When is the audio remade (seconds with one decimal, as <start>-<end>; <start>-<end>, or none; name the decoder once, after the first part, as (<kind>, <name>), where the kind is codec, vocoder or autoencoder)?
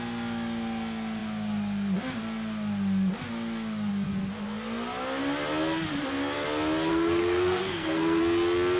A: 6.9-8.2 (codec, SNAC)